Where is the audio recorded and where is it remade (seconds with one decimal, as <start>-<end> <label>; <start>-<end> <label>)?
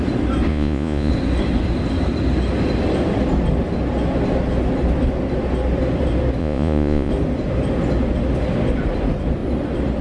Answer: 0.0-0.5 recorded; 0.5-1.1 remade; 1.1-6.4 recorded; 6.4-7.1 remade; 7.1-10.0 recorded